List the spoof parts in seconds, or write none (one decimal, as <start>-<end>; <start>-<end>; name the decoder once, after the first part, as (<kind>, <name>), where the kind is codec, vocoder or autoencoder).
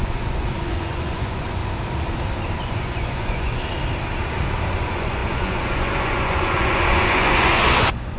0.0-1.6 (vocoder, Vocos); 2.6-3.6; 4.7-8.2